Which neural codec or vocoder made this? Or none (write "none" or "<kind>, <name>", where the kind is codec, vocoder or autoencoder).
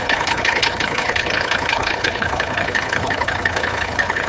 codec, HILCodec